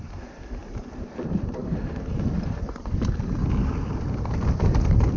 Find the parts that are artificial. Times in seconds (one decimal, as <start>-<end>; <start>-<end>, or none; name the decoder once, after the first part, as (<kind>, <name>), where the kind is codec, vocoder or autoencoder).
0.6-3.7 (vocoder, BigVGAN v2)